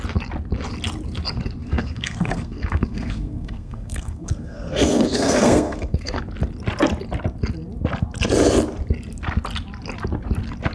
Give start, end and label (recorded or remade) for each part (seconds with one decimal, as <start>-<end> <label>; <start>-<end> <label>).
0.0-1.6 recorded; 1.6-6.2 remade; 6.2-10.7 recorded